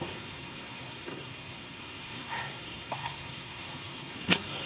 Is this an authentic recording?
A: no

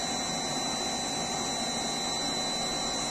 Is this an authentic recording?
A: yes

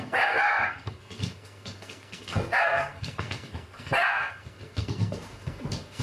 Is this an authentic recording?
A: no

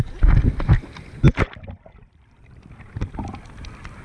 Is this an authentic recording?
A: yes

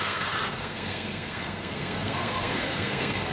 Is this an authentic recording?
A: no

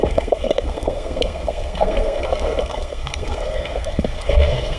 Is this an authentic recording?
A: no